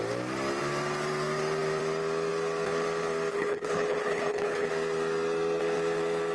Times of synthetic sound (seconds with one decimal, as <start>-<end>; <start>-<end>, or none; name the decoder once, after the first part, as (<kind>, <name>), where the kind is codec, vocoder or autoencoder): 3.3-4.7 (codec, HILCodec)